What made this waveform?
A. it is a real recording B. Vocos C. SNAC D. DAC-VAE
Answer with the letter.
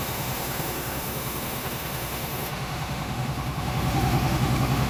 D